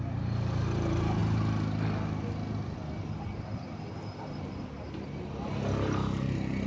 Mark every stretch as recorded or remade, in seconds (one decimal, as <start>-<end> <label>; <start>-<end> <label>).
0.0-6.7 recorded